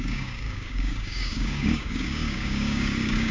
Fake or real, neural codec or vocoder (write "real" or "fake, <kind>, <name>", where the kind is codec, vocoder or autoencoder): fake, codec, DAC